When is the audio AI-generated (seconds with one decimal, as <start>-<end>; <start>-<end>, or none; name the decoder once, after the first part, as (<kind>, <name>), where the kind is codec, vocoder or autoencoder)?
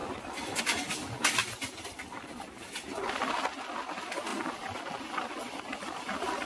0.6-1.4 (vocoder, BigVGAN v2); 3.8-4.3; 5.0-6.5